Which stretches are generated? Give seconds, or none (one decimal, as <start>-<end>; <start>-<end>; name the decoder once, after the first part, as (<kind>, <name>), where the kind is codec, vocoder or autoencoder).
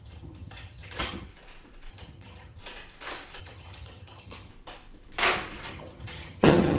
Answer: 0.0-1.3 (vocoder, HiFi-GAN); 1.9-2.6; 3.4-4.5; 5.7-6.8